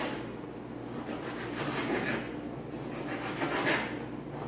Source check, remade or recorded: recorded